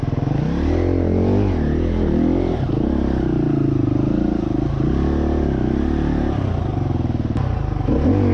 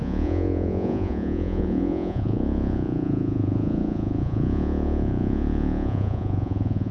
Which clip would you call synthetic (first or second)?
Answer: second